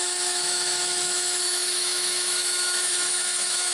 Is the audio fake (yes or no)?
yes